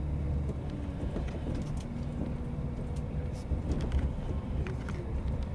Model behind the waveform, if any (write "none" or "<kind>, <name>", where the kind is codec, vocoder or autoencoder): none